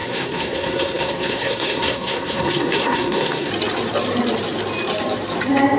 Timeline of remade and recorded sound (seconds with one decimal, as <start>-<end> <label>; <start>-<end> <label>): 0.0-3.5 remade; 3.5-5.8 recorded